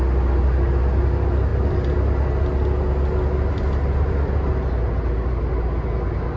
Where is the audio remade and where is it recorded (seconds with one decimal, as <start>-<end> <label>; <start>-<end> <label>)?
0.0-6.4 recorded